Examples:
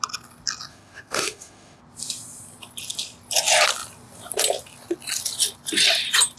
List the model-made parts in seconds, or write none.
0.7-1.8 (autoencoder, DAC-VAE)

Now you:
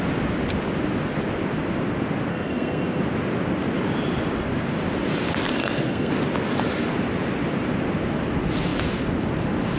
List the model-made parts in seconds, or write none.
2.3-3.0 (codec, SNAC); 5.5-6.1

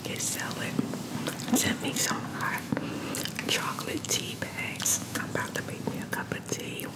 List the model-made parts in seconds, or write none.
2.3-2.9 (autoencoder, DAC-VAE); 3.4-5.2

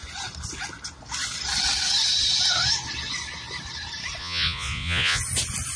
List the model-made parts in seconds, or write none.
4.2-5.2 (vocoder, Vocos)

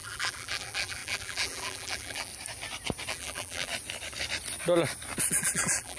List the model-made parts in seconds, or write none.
0.0-2.3 (vocoder, BigVGAN v2); 3.1-3.7; 5.3-6.0

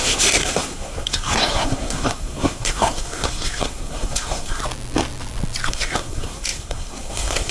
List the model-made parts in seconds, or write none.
0.0-4.6 (codec, SNAC); 5.7-7.5